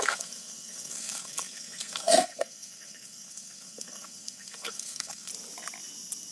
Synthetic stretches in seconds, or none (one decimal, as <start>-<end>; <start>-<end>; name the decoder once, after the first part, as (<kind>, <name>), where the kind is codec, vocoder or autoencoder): 0.0-5.3 (codec, SNAC)